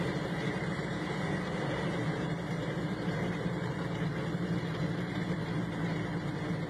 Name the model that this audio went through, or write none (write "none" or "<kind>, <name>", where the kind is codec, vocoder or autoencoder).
vocoder, BigVGAN v2